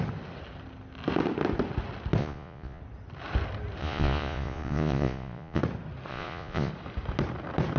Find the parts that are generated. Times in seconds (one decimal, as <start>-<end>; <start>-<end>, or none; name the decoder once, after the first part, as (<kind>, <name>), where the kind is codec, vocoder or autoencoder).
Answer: 2.2-2.8 (vocoder, Vocos); 3.8-5.6; 6.1-6.7

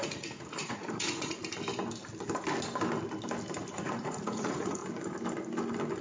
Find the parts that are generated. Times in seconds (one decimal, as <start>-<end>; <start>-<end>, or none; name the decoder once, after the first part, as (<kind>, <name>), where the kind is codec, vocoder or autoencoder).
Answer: 0.0-1.4 (vocoder, Vocos); 3.7-4.8

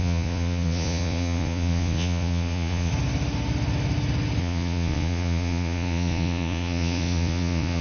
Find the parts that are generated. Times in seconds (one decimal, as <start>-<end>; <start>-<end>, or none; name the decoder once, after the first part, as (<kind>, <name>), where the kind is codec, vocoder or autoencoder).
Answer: 0.0-2.9 (vocoder, Vocos); 4.4-7.8